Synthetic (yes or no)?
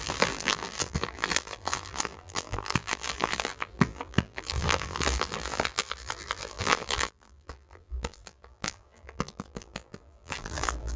yes